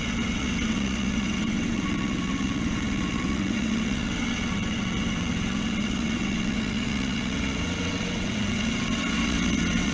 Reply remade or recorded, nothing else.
remade